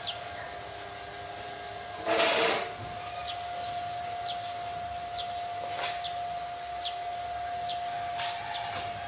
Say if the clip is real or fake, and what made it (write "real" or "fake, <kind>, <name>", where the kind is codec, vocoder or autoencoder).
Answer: real